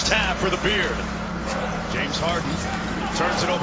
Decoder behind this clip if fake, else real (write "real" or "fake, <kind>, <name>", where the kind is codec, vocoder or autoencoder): fake, vocoder, BigVGAN v2